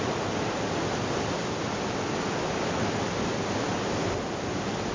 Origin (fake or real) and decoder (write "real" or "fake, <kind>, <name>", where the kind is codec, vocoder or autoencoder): real